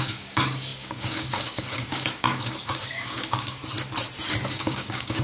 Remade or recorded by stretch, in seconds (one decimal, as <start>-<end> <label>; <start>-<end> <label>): 0.0-3.6 remade; 3.6-4.5 recorded; 4.5-5.2 remade